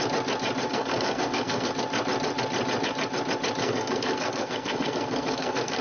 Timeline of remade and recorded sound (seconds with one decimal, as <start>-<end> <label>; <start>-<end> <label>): 0.0-0.7 recorded; 0.7-1.7 remade; 1.7-3.6 recorded; 3.6-5.8 remade